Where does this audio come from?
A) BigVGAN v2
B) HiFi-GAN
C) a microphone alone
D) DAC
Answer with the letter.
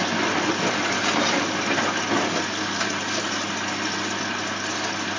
C